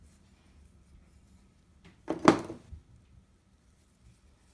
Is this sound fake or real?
real